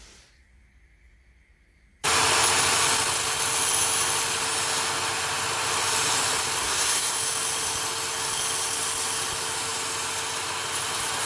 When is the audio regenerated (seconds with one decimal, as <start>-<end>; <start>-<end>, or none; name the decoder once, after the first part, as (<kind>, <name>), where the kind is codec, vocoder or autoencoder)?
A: 6.6-7.2 (codec, SNAC)